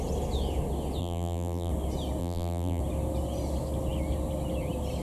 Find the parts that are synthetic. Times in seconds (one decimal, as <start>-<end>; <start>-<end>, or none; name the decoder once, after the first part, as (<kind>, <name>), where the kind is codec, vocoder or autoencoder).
1.0-1.7 (vocoder, BigVGAN v2); 2.2-2.8